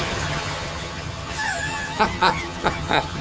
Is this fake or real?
fake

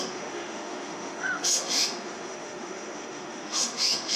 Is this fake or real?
fake